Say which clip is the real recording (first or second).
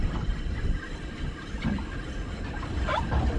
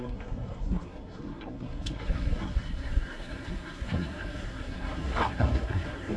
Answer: first